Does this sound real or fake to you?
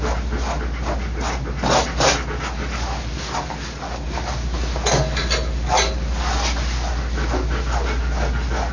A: real